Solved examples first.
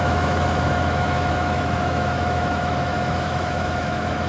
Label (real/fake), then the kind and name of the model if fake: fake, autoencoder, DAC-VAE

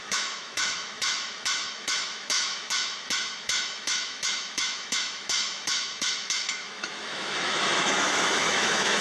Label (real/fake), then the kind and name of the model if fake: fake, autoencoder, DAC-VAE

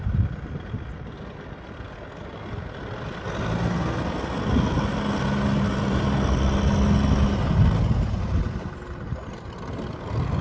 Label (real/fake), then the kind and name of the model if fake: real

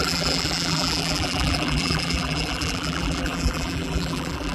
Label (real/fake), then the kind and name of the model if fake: fake, vocoder, BigVGAN v2